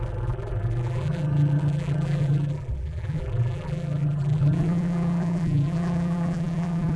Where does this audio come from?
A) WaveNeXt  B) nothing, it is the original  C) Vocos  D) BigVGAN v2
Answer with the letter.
D